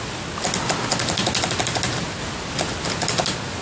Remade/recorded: recorded